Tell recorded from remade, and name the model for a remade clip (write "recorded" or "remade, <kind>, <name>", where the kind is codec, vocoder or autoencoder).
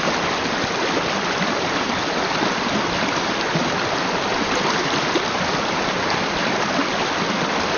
recorded